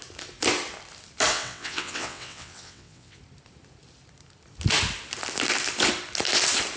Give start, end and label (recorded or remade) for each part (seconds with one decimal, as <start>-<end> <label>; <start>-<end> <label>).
0.0-1.3 recorded; 1.3-3.2 remade; 3.2-6.8 recorded